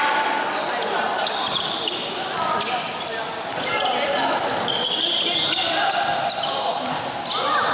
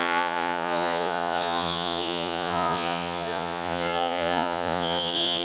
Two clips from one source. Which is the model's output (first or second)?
second